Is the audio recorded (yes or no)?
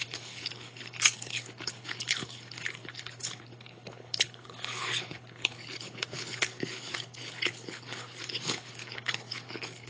no